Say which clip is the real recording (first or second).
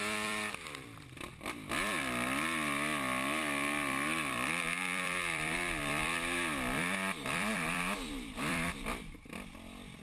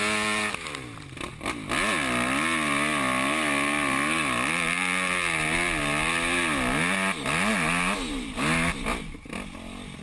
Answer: second